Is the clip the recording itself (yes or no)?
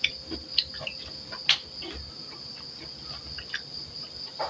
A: yes